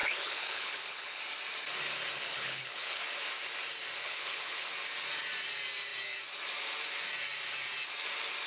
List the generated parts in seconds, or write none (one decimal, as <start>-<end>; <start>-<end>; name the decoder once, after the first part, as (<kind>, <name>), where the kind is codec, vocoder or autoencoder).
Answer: 0.0-1.2 (codec, HILCodec); 2.3-3.0; 4.0-4.7